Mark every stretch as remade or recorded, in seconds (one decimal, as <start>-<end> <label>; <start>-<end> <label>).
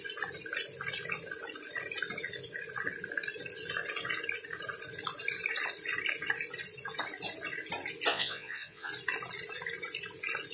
0.0-8.1 recorded; 8.1-8.9 remade; 8.9-10.5 recorded